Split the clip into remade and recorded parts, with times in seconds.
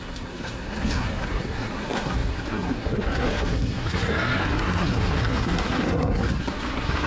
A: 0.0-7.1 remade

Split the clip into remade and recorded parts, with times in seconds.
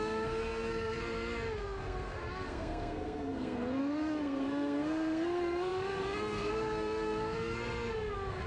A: 0.0-8.5 remade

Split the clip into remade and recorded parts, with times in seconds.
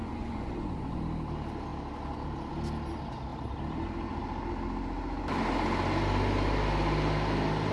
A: 0.0-1.0 remade; 1.0-7.7 recorded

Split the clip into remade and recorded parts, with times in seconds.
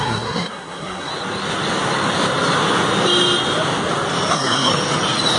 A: 0.0-1.1 remade; 1.1-4.3 recorded; 4.3-4.7 remade; 4.7-5.4 recorded